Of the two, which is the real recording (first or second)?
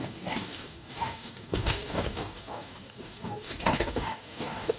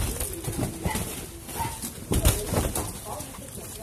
second